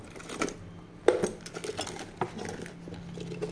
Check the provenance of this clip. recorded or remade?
recorded